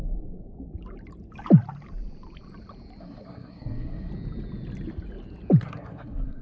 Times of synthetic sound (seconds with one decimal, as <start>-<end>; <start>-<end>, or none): 3.0-4.1; 5.6-6.4